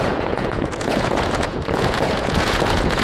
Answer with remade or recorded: remade